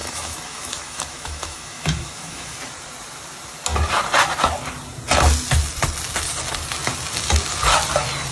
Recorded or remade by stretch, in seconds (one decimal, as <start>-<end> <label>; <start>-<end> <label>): 0.0-2.6 remade; 2.6-8.3 recorded